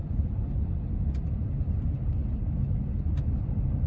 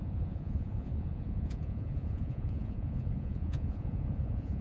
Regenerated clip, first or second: second